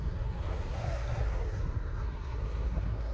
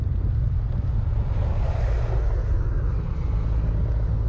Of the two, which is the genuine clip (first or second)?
second